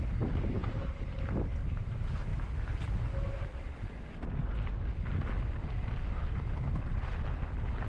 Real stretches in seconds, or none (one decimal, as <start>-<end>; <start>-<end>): 0.0-0.6; 1.2-7.9